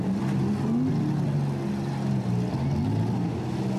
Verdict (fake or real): real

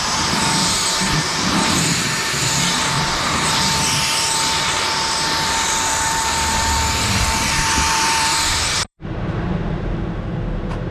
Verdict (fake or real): fake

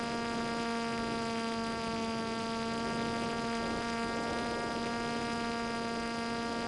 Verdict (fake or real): real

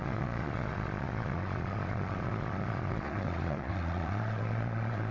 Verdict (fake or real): fake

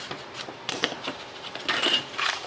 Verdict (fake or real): fake